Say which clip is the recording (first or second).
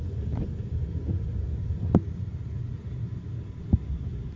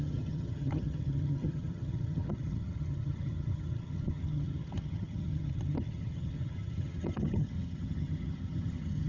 first